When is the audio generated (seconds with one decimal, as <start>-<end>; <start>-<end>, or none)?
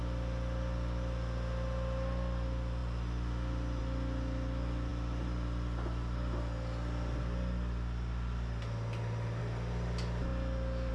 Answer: none